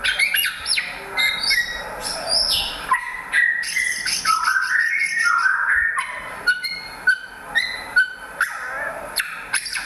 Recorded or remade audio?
recorded